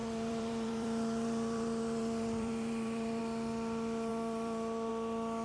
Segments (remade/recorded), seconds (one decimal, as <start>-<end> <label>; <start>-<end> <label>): 0.0-3.2 remade; 3.2-4.1 recorded; 4.1-4.9 remade; 4.9-5.4 recorded